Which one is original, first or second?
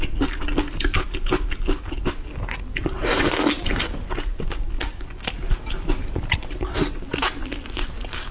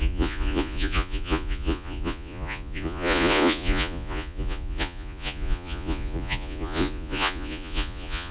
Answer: first